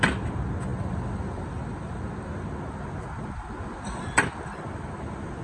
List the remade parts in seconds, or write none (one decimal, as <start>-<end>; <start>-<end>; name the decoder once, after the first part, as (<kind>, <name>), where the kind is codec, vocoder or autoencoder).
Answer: none